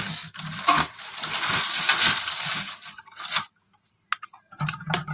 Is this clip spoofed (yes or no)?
no